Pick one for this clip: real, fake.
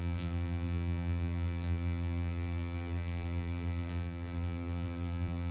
fake